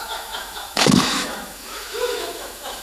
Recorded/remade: remade